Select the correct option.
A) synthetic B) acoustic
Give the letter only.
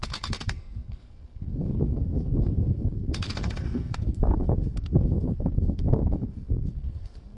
A